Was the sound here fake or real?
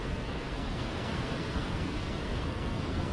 fake